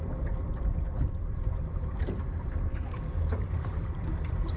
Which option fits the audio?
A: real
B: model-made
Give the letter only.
B